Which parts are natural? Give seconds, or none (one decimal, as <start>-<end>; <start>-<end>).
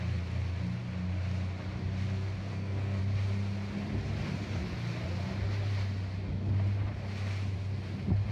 0.0-2.5; 3.0-8.3